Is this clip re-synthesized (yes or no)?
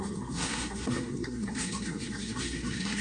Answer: yes